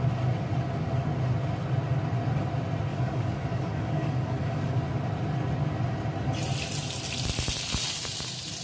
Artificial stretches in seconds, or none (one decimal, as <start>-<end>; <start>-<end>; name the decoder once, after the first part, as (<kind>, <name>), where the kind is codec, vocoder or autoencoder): 2.9-4.8 (codec, DAC)